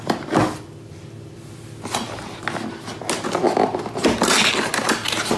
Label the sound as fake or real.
real